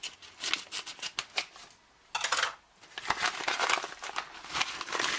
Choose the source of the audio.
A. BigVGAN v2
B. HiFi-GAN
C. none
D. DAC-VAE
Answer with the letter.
C